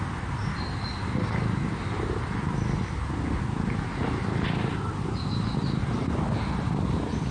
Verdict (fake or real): real